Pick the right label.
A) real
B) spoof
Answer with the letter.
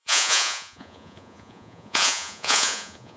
B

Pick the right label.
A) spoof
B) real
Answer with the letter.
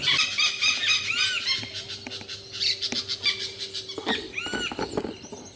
B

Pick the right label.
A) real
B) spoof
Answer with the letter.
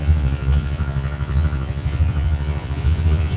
B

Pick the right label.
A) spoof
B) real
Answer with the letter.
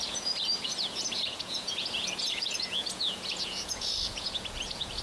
A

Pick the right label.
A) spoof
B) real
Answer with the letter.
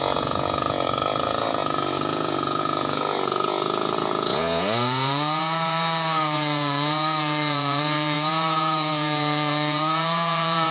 A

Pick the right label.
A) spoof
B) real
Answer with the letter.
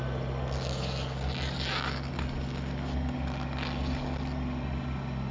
B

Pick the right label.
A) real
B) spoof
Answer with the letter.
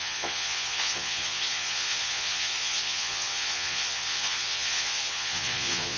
B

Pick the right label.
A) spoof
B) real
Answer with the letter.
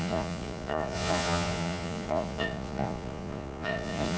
A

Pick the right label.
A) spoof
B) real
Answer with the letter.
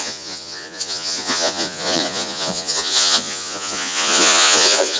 A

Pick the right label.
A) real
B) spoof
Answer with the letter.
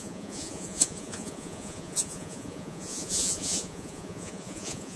B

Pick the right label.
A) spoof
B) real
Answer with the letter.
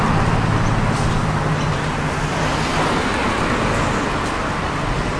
B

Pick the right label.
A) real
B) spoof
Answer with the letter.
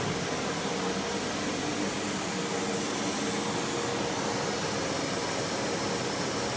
A